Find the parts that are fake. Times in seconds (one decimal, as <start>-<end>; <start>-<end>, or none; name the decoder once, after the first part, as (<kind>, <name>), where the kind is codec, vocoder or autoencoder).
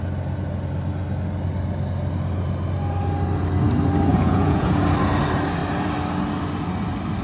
4.1-4.8 (vocoder, Vocos)